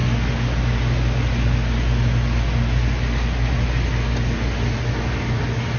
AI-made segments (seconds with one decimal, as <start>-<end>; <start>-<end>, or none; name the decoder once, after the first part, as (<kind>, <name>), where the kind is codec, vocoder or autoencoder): none